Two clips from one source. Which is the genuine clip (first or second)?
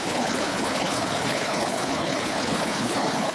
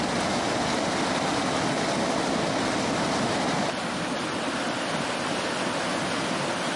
second